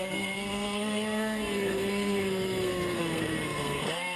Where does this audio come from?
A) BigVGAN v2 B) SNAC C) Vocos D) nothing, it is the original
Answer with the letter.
B